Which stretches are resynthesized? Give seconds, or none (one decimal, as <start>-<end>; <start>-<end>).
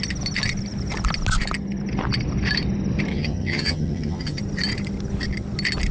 3.1-4.4